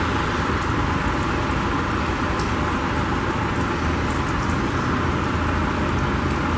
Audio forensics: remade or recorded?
recorded